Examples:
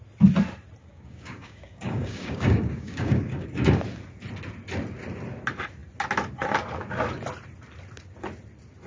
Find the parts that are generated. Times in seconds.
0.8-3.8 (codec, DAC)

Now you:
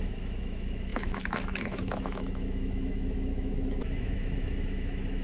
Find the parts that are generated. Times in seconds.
0.0-5.2 (autoencoder, DAC-VAE)